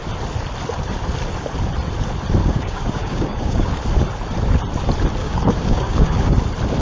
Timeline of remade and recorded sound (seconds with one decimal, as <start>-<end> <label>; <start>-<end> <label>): 0.0-2.4 recorded; 2.4-3.8 remade; 3.8-5.2 recorded; 5.2-6.3 remade; 6.3-6.8 recorded